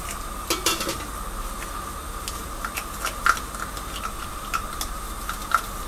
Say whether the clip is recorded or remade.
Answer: recorded